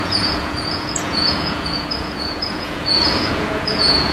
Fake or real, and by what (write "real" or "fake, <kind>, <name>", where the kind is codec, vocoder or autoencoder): fake, vocoder, Vocos